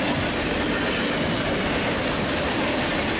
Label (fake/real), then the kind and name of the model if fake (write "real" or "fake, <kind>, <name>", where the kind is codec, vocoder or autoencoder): real